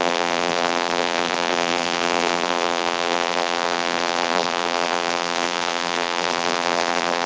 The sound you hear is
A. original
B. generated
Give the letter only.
B